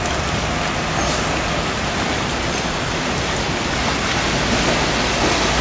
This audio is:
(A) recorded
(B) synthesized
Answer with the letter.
A